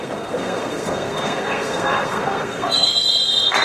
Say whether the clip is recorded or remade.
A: remade